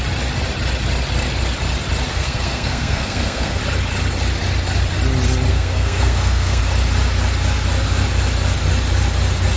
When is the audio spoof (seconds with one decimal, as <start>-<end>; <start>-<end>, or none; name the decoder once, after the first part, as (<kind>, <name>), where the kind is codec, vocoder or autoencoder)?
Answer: 2.1-3.6 (codec, SNAC); 5.5-6.6